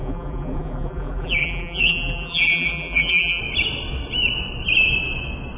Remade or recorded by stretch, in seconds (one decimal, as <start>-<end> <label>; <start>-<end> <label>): 0.0-3.4 remade; 3.4-5.6 recorded